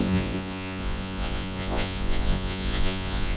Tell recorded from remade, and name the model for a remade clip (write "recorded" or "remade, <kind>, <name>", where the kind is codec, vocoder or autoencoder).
remade, vocoder, Vocos